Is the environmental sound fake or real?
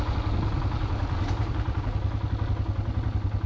real